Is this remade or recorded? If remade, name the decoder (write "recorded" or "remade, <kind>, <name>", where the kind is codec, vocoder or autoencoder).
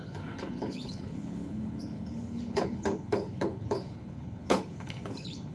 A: remade, codec, HILCodec